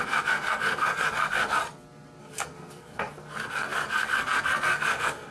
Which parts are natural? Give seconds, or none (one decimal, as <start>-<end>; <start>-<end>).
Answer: 1.6-2.2